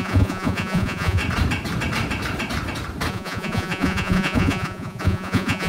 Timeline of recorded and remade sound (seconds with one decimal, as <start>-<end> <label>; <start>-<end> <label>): 0.0-1.2 remade; 1.2-3.1 recorded; 3.1-5.7 remade